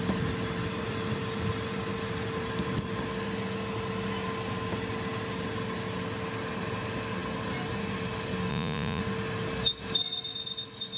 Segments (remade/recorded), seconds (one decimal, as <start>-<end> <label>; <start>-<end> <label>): 0.0-8.5 recorded; 8.5-9.0 remade; 9.0-11.0 recorded